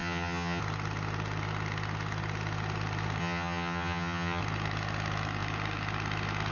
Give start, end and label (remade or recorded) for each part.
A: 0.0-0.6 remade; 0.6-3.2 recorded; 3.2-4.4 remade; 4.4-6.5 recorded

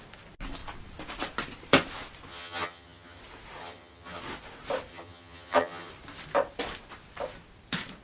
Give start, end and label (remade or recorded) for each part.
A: 0.0-2.3 recorded; 2.3-3.2 remade; 3.2-3.6 recorded; 3.6-4.2 remade; 4.2-4.9 recorded; 4.9-5.9 remade; 5.9-8.0 recorded

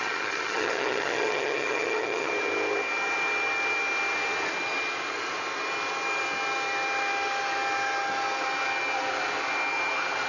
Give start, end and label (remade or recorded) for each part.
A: 0.0-2.3 remade; 2.3-10.3 recorded

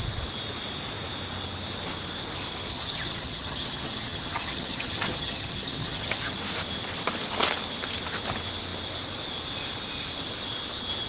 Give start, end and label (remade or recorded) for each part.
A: 0.0-2.7 recorded; 2.7-6.3 remade; 6.3-11.1 recorded

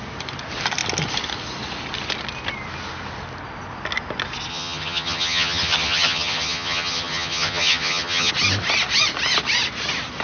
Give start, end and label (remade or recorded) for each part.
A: 0.0-4.5 recorded; 4.5-8.3 remade; 8.3-10.2 recorded

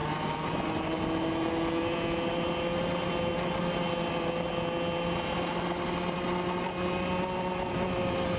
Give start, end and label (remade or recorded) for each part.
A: 0.0-8.4 recorded